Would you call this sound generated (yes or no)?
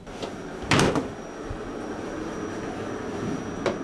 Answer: no